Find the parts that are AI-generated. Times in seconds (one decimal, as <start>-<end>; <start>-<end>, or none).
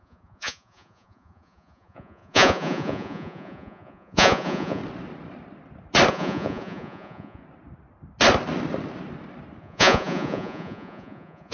0.0-4.8; 6.1-7.4; 9.6-11.5